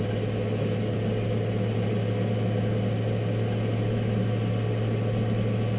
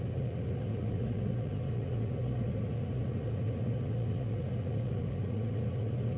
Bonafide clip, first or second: first